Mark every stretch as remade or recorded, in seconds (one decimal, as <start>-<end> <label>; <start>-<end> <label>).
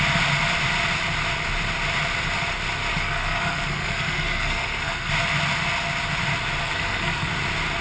0.0-2.9 recorded; 2.9-5.1 remade; 5.1-6.6 recorded; 6.6-7.3 remade; 7.3-7.8 recorded